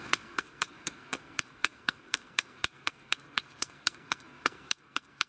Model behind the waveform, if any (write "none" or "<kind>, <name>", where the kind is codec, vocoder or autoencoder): codec, SNAC